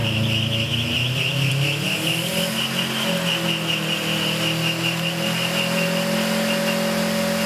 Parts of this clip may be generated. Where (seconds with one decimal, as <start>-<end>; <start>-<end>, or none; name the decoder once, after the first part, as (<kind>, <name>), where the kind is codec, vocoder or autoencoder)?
none